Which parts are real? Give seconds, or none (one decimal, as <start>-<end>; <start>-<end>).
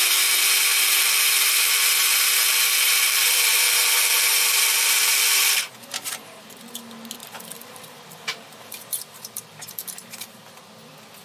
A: 0.0-0.7; 3.7-4.5; 6.5-7.2; 10.3-11.2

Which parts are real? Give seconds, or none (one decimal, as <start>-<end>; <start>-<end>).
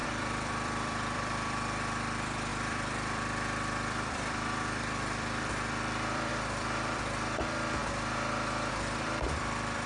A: 7.8-8.7